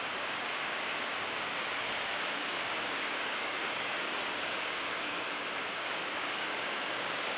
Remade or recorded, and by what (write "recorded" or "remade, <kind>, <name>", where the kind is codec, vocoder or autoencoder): remade, codec, DAC